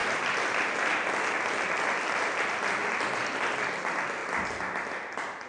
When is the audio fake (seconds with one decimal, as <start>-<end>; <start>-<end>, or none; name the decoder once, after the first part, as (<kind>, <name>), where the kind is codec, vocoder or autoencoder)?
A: 3.3-4.2 (vocoder, BigVGAN v2)